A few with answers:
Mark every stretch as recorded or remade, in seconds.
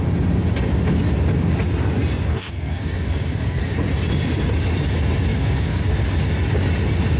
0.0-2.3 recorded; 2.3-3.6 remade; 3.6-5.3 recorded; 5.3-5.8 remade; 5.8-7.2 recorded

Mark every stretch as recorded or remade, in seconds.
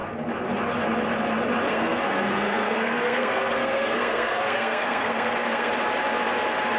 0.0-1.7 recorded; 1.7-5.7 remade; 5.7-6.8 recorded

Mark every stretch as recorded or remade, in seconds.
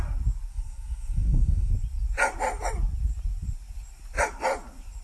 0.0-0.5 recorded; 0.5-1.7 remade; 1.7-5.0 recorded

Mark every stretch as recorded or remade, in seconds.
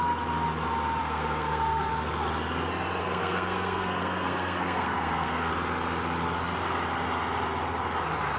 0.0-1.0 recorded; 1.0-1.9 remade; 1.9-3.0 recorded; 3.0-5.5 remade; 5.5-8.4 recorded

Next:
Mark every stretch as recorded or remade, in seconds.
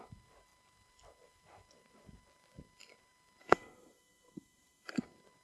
0.0-3.4 recorded; 3.4-5.0 remade; 5.0-5.4 recorded